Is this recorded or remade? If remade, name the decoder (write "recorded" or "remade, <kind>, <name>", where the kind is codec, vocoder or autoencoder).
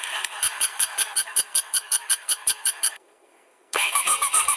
remade, codec, SNAC